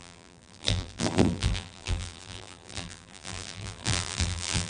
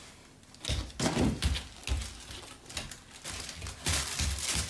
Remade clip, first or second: first